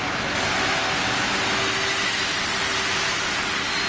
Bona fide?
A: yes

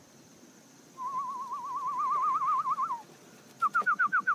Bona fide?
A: yes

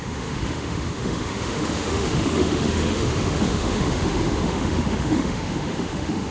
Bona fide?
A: no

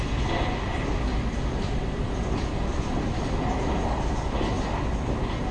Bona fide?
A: yes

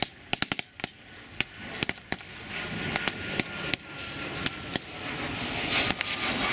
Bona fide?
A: yes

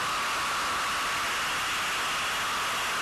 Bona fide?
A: yes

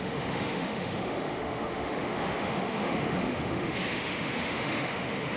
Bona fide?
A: no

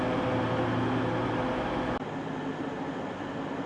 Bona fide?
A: yes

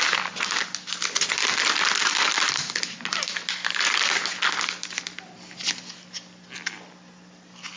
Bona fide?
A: yes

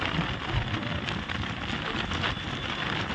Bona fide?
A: yes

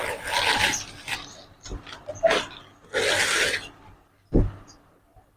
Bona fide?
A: yes